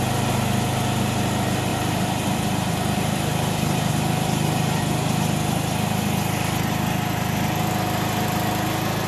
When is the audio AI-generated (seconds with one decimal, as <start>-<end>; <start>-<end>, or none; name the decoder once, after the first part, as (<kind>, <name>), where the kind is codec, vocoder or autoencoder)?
1.7-3.9 (vocoder, BigVGAN v2)